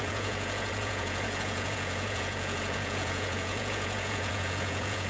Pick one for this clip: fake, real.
fake